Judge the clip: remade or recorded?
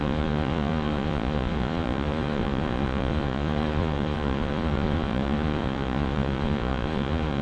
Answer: remade